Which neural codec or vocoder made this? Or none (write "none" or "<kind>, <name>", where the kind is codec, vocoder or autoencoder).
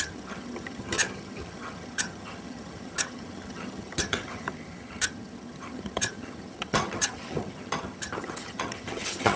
vocoder, HiFi-GAN